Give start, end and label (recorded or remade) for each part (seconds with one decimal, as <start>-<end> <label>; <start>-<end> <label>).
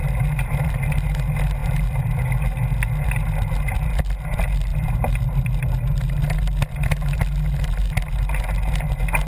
0.0-0.7 remade; 0.7-1.6 recorded; 1.6-2.2 remade; 2.2-4.7 recorded; 4.7-5.5 remade; 5.5-9.3 recorded